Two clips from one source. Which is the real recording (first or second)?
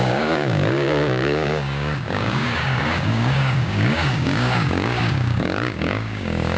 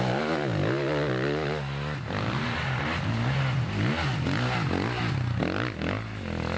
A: second